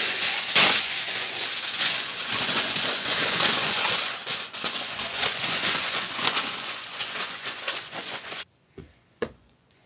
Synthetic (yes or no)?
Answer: yes